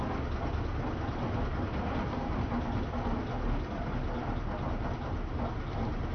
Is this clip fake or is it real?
real